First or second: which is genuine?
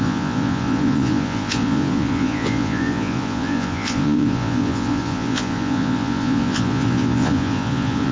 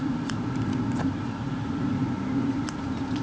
second